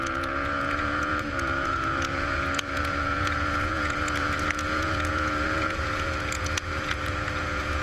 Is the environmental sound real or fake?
fake